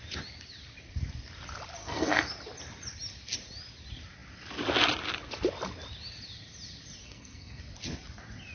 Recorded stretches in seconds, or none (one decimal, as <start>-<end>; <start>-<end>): 0.0-1.8; 2.3-7.0; 7.6-8.5